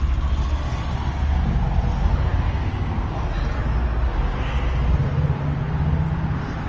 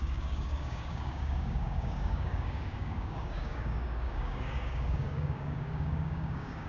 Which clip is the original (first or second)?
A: first